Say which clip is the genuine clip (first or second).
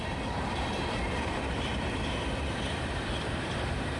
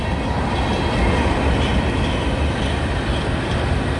second